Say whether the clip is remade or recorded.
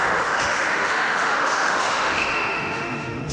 remade